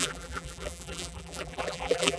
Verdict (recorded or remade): remade